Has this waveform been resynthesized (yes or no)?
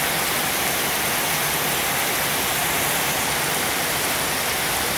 no